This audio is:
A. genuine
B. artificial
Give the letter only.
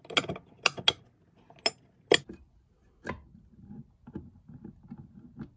A